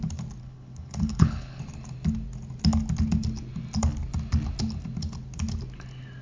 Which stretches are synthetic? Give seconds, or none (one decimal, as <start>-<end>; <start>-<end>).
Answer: 0.4-1.6